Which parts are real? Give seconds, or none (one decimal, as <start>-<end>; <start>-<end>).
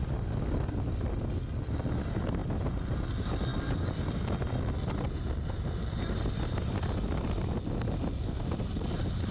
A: 0.0-9.3